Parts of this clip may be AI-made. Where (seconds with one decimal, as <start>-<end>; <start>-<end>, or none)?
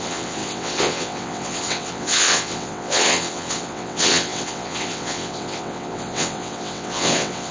0.0-7.5